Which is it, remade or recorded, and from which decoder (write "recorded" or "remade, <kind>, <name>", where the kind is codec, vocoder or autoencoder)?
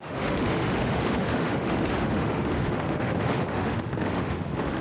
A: remade, autoencoder, DAC-VAE